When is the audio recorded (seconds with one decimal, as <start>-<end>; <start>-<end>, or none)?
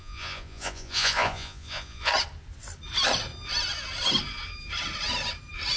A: 2.1-5.8